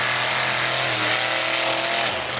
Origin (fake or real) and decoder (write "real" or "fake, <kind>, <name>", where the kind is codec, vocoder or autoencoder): real